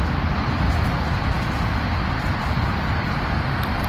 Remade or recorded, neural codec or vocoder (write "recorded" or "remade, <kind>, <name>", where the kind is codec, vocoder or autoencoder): recorded